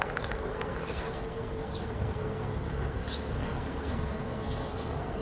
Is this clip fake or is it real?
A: fake